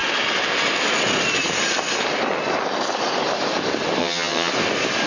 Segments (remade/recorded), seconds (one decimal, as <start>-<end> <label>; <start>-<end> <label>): 0.0-4.0 recorded; 4.0-4.5 remade; 4.5-5.1 recorded